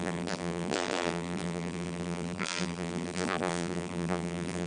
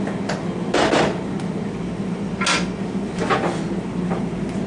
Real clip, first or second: second